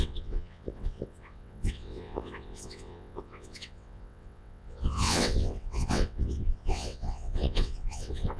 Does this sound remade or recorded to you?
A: remade